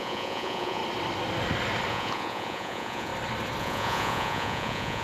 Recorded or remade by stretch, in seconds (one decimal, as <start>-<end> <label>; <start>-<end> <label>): 0.0-0.8 remade; 0.8-1.9 recorded; 1.9-3.1 remade; 3.1-3.6 recorded; 3.6-5.0 remade